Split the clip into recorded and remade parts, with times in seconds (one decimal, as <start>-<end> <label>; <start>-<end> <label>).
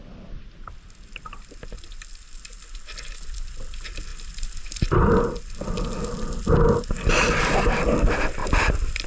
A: 0.0-8.4 recorded; 8.4-9.1 remade